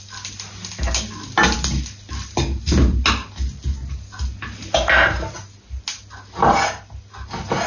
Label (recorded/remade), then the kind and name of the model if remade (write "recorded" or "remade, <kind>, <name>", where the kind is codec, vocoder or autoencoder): recorded